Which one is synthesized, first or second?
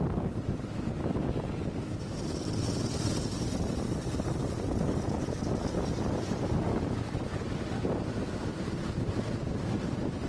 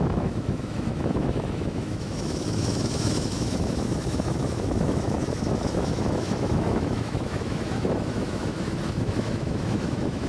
second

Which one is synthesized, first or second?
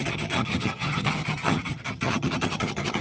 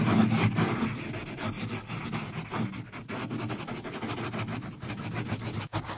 first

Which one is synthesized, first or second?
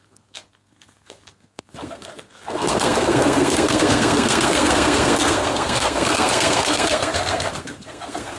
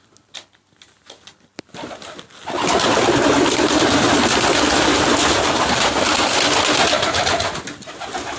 first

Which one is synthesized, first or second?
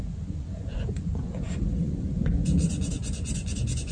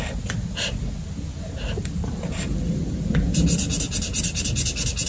first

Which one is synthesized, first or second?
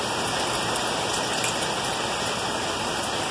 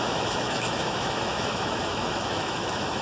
second